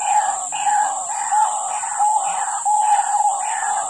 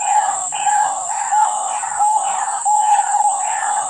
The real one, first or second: first